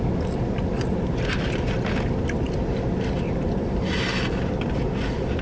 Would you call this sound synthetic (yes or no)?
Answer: no